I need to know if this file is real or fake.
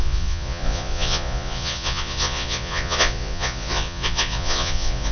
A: fake